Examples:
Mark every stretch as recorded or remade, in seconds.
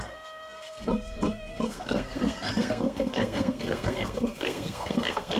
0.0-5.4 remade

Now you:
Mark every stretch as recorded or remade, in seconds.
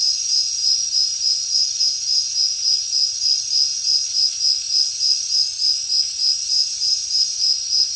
0.0-8.0 recorded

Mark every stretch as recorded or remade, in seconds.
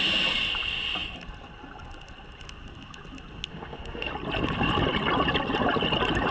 0.0-3.5 recorded; 3.5-4.1 remade; 4.1-6.3 recorded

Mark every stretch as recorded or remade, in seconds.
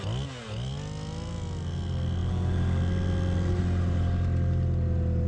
0.0-5.3 recorded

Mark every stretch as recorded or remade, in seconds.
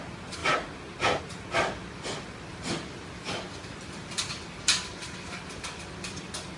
0.0-2.5 recorded; 2.5-6.6 remade